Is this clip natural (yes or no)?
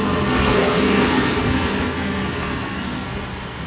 no